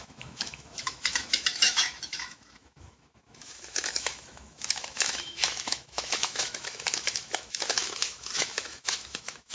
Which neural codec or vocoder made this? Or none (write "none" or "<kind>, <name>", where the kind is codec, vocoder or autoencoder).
autoencoder, DAC-VAE